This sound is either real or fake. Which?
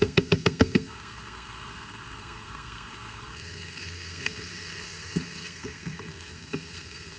fake